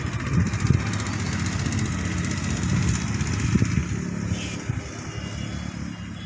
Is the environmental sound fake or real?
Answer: real